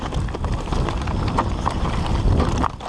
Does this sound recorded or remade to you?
recorded